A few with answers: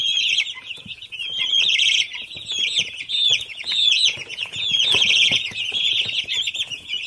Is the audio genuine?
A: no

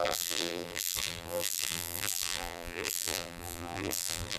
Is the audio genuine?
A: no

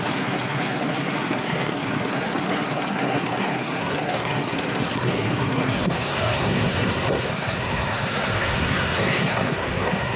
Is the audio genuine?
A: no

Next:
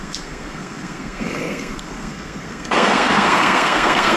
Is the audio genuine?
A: no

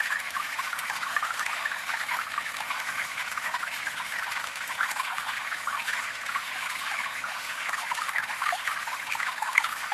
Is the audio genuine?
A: no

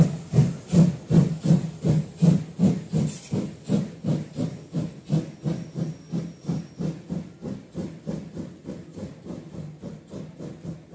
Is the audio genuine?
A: yes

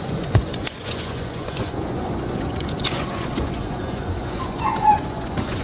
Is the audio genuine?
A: no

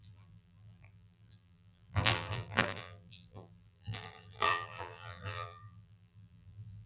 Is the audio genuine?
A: no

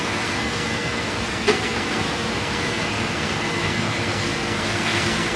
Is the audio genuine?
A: no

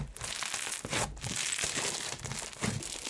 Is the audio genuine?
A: yes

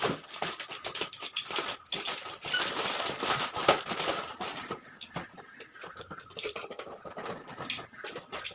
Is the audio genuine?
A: yes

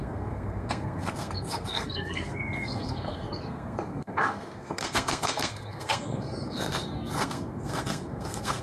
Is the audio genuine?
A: no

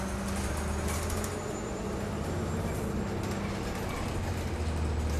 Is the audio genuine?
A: yes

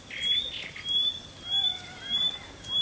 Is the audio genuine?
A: yes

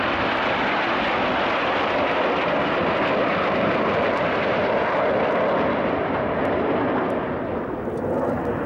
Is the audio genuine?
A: yes